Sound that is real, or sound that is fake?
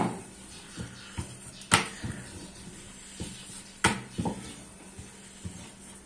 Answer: real